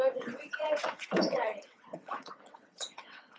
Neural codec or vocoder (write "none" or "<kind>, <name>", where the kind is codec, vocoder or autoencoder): vocoder, WaveNeXt